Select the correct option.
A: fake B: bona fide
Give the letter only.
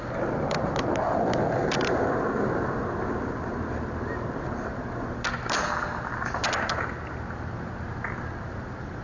B